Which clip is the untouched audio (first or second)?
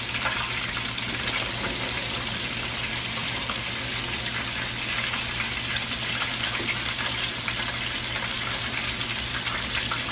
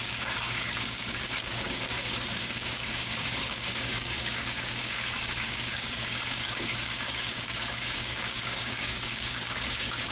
first